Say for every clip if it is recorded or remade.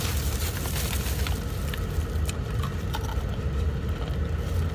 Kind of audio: recorded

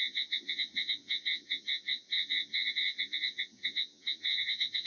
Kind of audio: remade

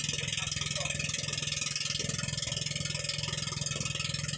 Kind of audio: recorded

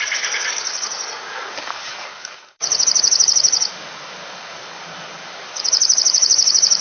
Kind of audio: remade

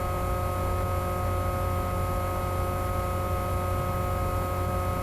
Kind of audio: recorded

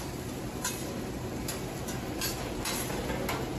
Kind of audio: recorded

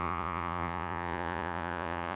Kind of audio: remade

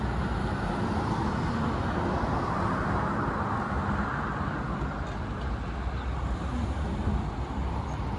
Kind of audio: recorded